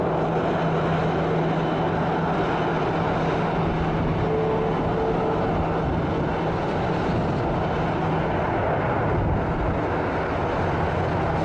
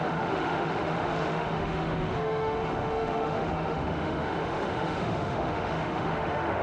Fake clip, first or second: second